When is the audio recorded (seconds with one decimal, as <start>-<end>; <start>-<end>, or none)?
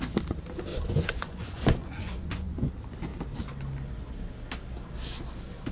0.0-0.7; 2.7-5.7